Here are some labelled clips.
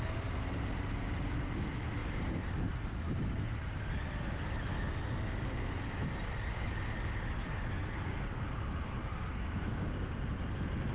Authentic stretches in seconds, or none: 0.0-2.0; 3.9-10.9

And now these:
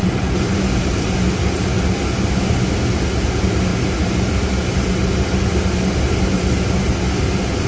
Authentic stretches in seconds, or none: 1.4-7.7

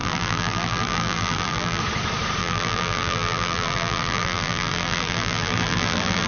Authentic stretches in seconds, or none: 1.8-2.4

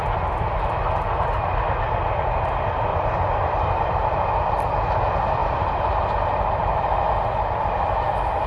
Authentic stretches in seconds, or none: 0.0-2.9; 4.2-5.4; 5.9-8.5

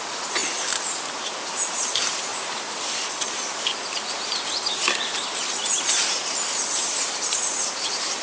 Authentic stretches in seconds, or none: 0.4-1.1; 2.3-6.1

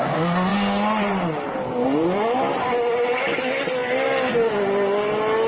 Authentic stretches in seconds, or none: 0.0-5.5